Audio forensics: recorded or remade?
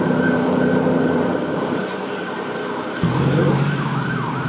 remade